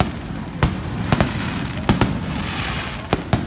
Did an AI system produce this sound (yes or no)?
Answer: no